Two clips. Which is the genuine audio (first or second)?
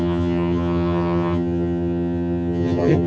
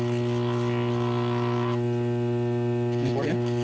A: second